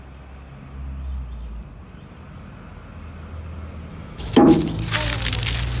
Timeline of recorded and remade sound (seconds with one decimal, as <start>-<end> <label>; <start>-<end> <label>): 0.0-3.9 recorded; 3.9-4.4 remade; 4.4-5.8 recorded

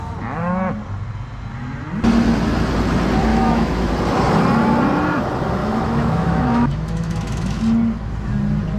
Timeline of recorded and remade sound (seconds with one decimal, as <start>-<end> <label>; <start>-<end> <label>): 0.0-3.3 recorded; 3.3-3.9 remade; 3.9-5.6 recorded; 5.6-7.6 remade; 7.6-8.8 recorded

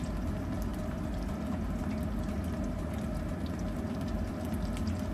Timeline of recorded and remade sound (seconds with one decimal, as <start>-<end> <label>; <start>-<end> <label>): 0.0-5.1 recorded

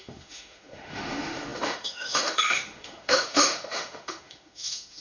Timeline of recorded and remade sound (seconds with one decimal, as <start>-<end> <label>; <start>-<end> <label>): 0.0-5.0 remade

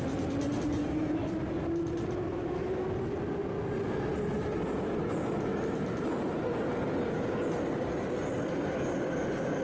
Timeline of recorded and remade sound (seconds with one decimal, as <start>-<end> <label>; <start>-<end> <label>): 0.0-0.8 recorded; 0.8-1.3 remade; 1.3-2.3 recorded; 2.3-2.9 remade; 2.9-9.6 recorded

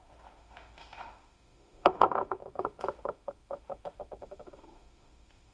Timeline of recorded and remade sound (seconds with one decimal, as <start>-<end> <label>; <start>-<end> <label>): 0.0-5.5 remade

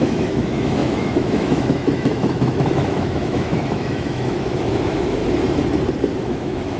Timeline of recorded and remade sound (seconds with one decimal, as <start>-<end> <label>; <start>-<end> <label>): 0.0-5.2 remade; 5.2-6.2 recorded; 6.2-6.8 remade